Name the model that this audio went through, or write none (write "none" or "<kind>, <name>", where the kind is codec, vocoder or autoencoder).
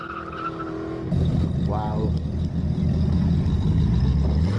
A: none